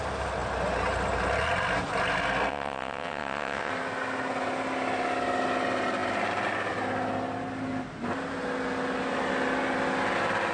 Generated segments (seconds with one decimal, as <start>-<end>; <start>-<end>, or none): 2.5-3.7

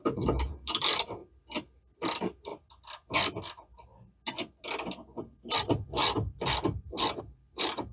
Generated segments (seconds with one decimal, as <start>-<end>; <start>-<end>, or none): 0.0-1.2; 1.8-2.5; 7.2-7.9